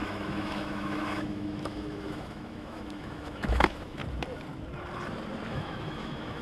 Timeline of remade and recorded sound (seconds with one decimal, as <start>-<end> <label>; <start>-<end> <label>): 0.0-4.0 remade; 4.0-5.5 recorded; 5.5-6.4 remade